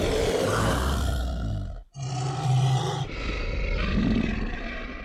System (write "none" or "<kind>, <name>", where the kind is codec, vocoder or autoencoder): none